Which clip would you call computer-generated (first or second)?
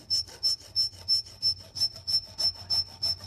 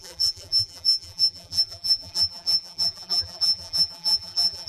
second